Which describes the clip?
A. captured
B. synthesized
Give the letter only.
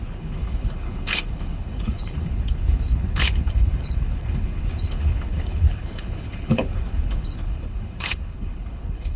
B